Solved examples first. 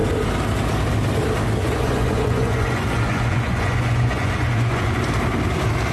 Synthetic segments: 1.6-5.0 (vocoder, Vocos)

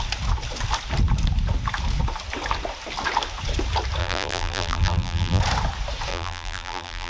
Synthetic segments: 4.0-5.4 (vocoder, BigVGAN v2); 6.1-7.1

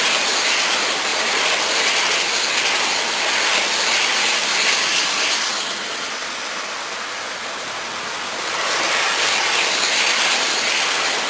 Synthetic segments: none